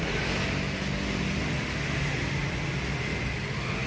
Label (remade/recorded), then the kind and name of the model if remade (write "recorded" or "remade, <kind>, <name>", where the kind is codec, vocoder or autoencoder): recorded